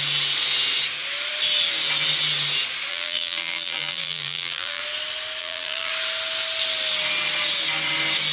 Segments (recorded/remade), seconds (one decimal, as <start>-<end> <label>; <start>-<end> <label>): 0.0-2.9 recorded; 2.9-4.8 remade; 4.8-5.4 recorded; 5.4-5.9 remade; 5.9-8.3 recorded